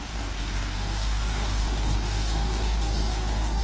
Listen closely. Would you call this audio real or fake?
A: fake